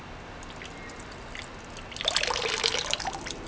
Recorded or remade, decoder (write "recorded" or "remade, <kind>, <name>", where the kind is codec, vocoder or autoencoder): recorded